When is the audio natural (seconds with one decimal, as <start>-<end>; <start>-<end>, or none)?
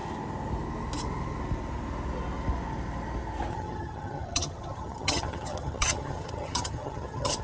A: 0.0-3.5